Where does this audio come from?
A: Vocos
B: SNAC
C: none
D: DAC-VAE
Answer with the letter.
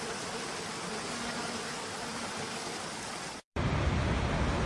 C